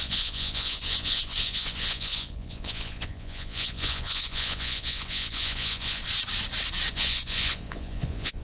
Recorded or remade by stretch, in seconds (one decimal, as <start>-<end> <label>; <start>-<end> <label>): 0.0-6.0 remade; 6.0-6.9 recorded; 6.9-8.4 remade